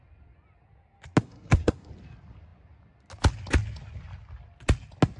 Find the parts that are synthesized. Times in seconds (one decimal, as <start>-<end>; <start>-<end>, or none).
1.2-1.9